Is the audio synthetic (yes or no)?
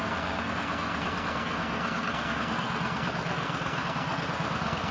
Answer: yes